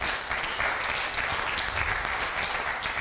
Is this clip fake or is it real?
real